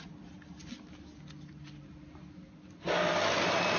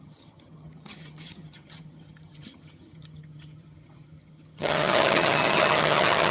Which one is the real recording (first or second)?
first